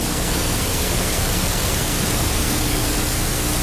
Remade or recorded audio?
remade